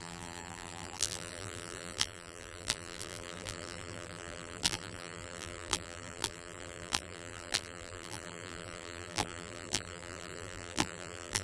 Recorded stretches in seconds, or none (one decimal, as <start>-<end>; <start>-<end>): none

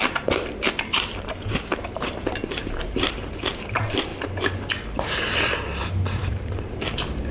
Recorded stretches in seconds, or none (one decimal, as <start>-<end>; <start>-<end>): 4.1-5.0

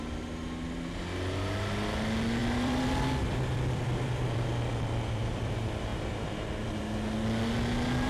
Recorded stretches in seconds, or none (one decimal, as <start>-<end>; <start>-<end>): 0.0-2.4; 5.5-8.1

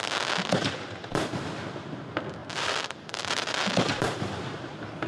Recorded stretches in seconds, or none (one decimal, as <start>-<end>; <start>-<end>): 0.0-0.6; 1.7-2.4; 4.3-5.1

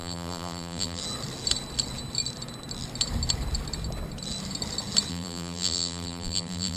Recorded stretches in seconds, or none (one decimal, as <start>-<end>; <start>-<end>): 1.0-5.1

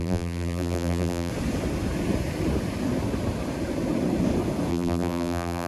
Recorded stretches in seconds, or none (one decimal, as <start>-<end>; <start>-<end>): 1.3-4.7